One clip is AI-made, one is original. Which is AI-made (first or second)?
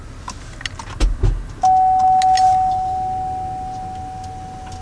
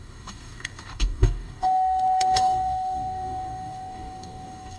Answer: second